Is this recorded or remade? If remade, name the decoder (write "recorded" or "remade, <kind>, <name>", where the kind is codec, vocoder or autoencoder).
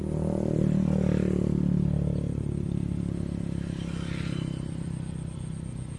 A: recorded